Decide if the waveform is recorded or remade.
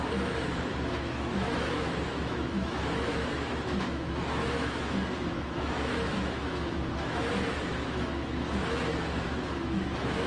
remade